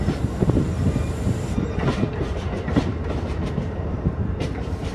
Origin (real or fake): fake